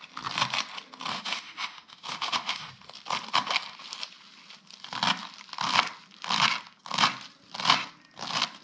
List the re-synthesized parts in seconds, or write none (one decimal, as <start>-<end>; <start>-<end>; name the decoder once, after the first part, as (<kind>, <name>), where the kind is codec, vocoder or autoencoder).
1.1-2.7 (autoencoder, DAC-VAE)